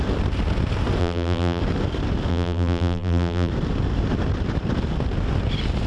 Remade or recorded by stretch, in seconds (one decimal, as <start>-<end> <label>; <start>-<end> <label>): 0.0-1.0 recorded; 1.0-1.6 remade; 1.6-2.3 recorded; 2.3-3.5 remade; 3.5-5.9 recorded